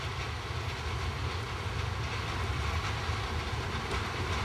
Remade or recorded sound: recorded